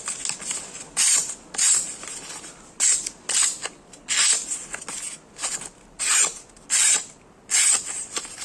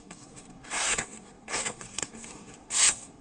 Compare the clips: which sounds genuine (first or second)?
first